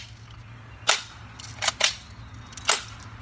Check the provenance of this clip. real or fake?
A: real